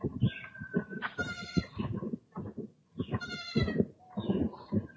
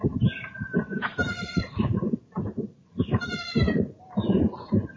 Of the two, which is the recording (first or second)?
first